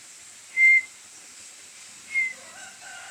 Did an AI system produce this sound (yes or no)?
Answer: no